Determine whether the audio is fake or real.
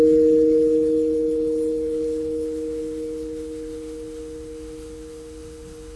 fake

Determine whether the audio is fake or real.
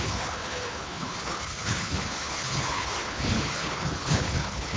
fake